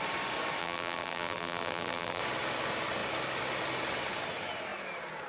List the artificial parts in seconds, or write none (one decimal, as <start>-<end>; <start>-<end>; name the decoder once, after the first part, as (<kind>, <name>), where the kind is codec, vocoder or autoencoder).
0.6-2.2 (vocoder, BigVGAN v2)